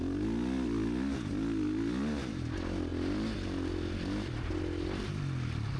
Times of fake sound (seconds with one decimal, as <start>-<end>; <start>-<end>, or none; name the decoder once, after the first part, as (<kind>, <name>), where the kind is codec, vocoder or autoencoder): none